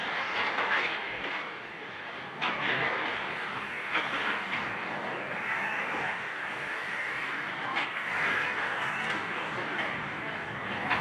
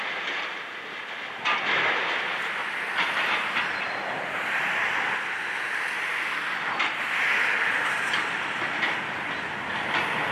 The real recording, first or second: second